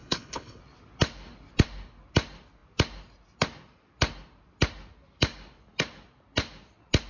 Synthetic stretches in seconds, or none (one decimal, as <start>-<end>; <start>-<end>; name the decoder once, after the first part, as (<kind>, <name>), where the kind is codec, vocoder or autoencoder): 0.0-0.6 (codec, HILCodec)